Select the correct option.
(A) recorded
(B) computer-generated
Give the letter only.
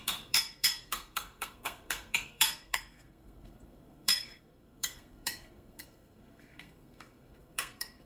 B